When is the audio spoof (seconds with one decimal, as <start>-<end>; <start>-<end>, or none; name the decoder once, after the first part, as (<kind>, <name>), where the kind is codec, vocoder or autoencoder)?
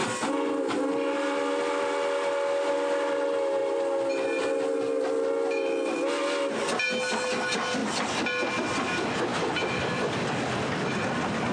none